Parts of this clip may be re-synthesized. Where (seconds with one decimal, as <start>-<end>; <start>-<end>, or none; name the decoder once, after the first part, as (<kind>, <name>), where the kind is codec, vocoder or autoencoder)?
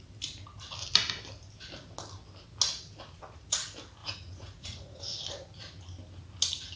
4.0-5.0 (vocoder, Vocos)